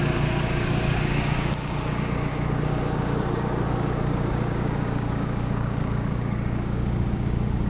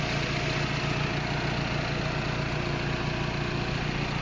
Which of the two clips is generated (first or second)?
first